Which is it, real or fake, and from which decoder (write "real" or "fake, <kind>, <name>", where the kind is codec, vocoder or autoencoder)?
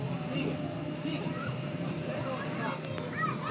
real